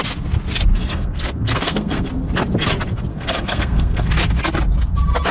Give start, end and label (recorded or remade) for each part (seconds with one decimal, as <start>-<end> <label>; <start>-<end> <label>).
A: 0.0-0.7 recorded; 0.7-2.1 remade; 2.1-3.1 recorded; 3.1-4.1 remade; 4.1-5.3 recorded